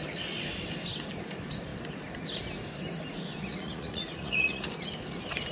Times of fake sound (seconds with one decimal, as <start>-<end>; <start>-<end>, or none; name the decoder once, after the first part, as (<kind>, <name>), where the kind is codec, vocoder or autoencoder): 3.5-4.7 (vocoder, Vocos)